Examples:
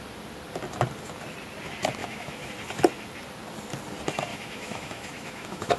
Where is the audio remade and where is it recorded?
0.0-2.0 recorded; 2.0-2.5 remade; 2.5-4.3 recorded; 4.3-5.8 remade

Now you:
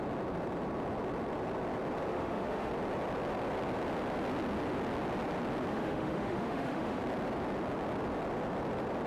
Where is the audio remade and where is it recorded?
0.0-2.1 recorded; 2.1-2.7 remade; 2.7-5.7 recorded; 5.7-7.0 remade; 7.0-9.1 recorded

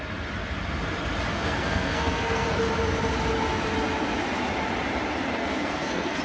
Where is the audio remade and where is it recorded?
0.0-1.3 recorded; 1.3-2.6 remade; 2.6-5.4 recorded; 5.4-6.2 remade

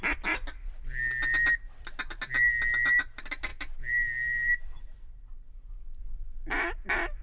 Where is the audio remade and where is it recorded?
0.0-7.2 recorded